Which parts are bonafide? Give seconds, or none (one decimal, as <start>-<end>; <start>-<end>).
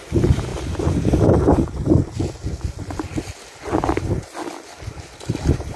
0.0-5.8